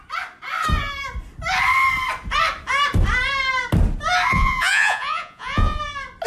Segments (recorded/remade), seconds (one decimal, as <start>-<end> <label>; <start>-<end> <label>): 0.0-4.3 recorded; 4.3-5.8 remade; 5.8-6.3 recorded